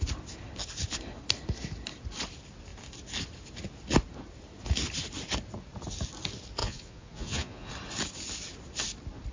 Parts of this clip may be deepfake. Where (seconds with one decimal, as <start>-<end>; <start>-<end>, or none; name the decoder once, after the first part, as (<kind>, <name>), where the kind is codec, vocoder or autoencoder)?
6.6-7.7 (vocoder, Vocos)